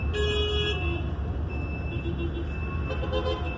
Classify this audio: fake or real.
real